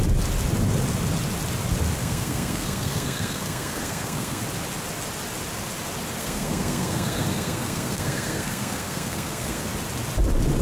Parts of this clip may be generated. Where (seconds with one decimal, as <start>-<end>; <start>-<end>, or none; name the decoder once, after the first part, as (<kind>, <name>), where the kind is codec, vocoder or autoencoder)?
2.0-4.4 (codec, SNAC); 6.2-9.7